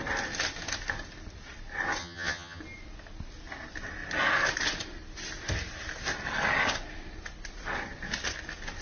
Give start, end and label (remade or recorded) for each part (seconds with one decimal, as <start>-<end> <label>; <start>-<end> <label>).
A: 0.0-2.0 recorded; 2.0-2.6 remade; 2.6-8.8 recorded